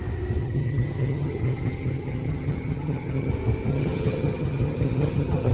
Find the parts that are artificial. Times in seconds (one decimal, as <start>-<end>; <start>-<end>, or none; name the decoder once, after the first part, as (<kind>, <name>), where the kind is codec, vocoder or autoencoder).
0.4-3.3 (vocoder, HiFi-GAN); 3.7-5.5